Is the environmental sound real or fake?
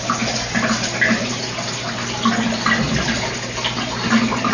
real